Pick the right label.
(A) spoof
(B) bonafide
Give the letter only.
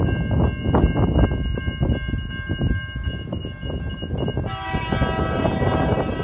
B